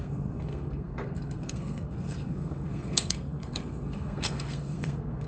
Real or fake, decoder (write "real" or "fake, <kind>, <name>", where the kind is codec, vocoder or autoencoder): fake, codec, SNAC